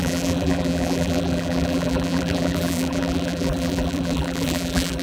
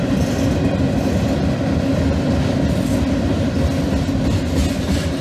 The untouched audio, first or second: second